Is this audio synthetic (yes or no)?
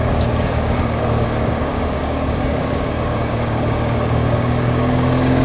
yes